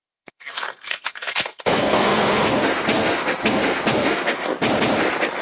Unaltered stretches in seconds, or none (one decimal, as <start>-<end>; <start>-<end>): 4.5-5.4